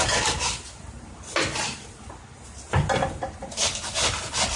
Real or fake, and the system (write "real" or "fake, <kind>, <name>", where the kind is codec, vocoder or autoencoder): real